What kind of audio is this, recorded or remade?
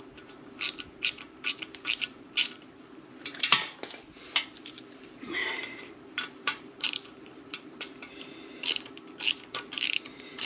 remade